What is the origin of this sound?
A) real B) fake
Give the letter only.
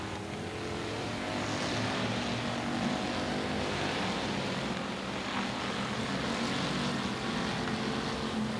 A